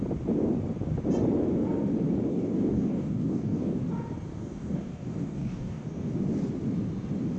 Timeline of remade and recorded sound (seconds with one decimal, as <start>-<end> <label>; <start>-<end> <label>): 0.0-2.3 recorded; 2.3-3.8 remade; 3.8-4.3 recorded; 4.3-6.1 remade; 6.1-7.4 recorded